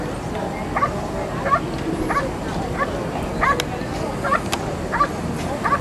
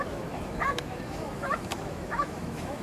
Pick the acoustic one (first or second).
first